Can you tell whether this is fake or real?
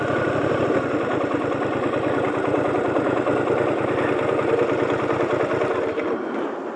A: real